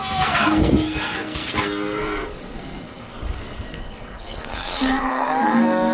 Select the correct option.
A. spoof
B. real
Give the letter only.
A